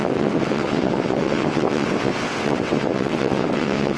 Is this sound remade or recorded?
remade